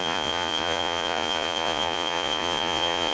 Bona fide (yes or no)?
no